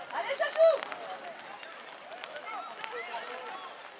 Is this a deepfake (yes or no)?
no